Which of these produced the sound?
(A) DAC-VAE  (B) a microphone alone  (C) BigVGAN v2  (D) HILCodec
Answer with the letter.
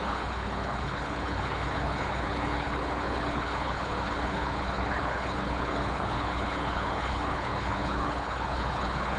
D